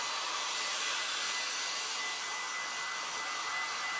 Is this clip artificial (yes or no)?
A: no